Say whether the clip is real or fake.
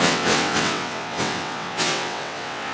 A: fake